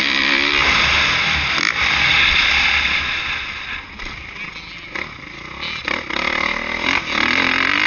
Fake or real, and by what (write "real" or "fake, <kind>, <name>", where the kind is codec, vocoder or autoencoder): real